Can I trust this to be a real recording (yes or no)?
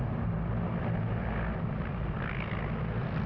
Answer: yes